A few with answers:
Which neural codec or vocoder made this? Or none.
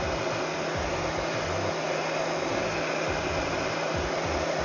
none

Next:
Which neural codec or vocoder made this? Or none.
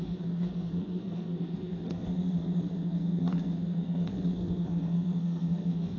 codec, SNAC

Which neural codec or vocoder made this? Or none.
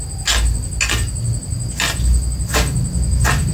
none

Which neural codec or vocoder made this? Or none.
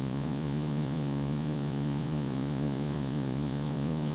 vocoder, Vocos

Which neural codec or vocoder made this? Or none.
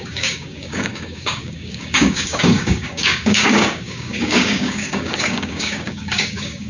codec, DAC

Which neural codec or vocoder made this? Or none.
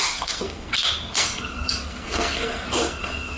codec, SNAC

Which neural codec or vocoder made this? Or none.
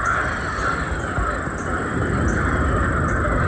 none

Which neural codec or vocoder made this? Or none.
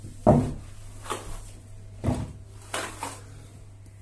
none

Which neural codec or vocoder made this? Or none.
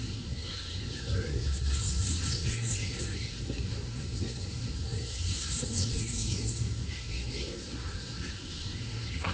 codec, SNAC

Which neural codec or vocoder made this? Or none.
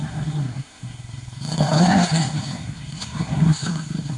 codec, SNAC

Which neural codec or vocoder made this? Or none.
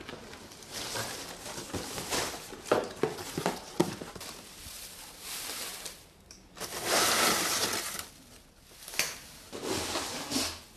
none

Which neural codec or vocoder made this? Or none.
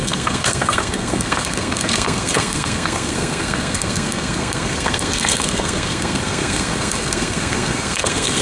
codec, SNAC